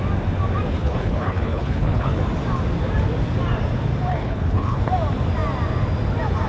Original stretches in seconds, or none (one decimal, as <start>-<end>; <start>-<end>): 0.0-0.7; 2.2-4.1; 4.8-6.5